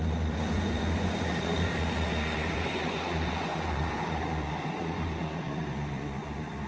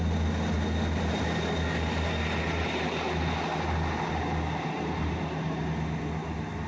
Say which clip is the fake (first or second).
first